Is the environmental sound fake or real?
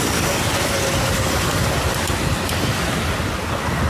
real